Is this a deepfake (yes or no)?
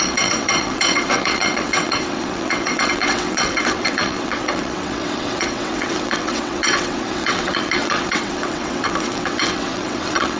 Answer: yes